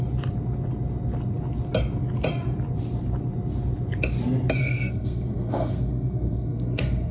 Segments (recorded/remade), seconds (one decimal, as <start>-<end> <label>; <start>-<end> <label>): 0.0-4.6 recorded; 4.6-7.1 remade